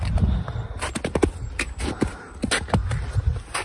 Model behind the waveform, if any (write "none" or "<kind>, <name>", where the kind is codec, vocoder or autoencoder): none